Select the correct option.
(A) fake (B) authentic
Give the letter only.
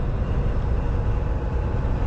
B